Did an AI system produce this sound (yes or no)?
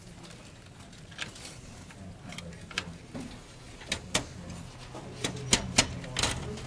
no